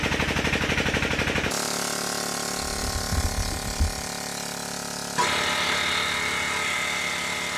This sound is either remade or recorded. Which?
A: recorded